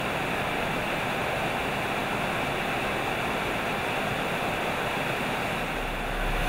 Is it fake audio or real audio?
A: real